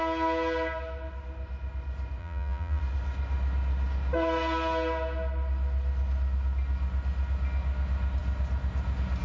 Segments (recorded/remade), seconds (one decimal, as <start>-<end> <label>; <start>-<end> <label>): 0.0-2.2 recorded; 2.2-2.8 remade; 2.8-9.2 recorded